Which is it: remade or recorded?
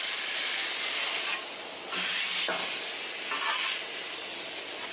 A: recorded